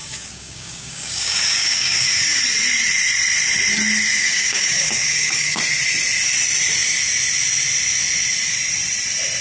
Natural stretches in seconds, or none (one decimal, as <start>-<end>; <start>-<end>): 2.4-4.1; 5.6-9.4